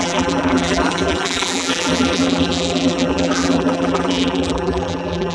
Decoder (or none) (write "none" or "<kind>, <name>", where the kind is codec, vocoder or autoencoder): vocoder, BigVGAN v2